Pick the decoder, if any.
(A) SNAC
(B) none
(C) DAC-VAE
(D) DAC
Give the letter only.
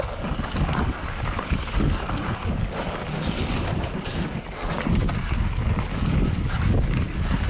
D